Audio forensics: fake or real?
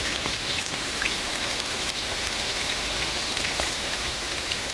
fake